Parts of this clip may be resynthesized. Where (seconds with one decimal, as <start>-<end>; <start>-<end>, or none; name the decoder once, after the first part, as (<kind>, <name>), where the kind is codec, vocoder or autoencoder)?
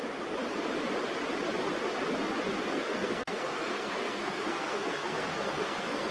2.7-6.1 (codec, SNAC)